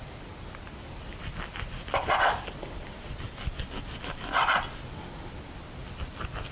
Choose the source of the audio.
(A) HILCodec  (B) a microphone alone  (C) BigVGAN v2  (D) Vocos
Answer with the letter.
B